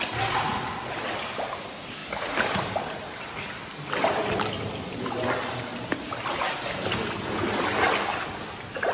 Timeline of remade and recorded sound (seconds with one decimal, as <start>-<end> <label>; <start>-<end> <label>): 0.0-2.0 recorded; 2.0-2.7 remade; 2.7-8.9 recorded